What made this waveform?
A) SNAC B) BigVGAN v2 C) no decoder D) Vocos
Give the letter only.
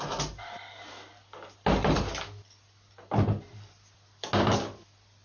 C